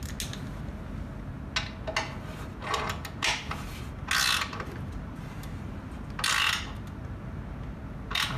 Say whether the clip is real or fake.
real